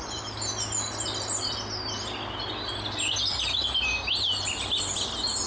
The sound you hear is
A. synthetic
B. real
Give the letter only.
B